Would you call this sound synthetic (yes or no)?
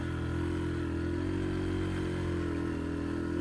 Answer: no